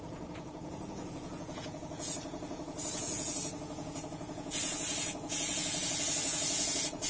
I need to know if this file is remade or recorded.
remade